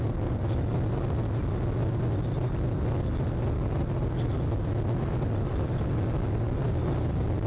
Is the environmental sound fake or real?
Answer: real